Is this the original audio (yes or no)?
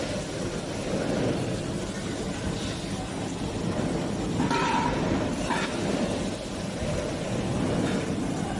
yes